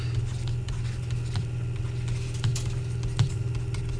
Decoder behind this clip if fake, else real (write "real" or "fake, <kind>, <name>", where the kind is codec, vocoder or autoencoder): real